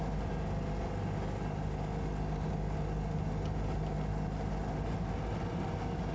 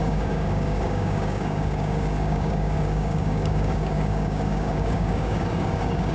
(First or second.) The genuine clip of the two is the first